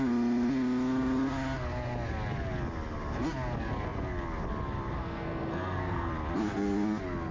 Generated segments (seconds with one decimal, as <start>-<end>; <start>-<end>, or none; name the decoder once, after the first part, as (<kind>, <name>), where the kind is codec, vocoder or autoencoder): 5.0-6.1 (codec, SNAC)